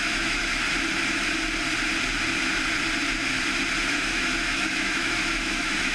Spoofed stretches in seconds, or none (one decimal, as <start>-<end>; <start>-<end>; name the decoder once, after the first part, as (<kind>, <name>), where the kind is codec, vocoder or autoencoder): 0.0-0.4 (autoencoder, DAC-VAE); 3.9-5.9